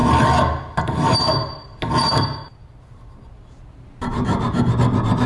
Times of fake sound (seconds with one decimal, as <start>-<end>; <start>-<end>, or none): 2.6-4.6